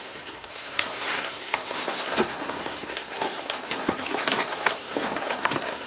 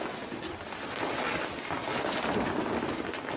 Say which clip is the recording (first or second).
second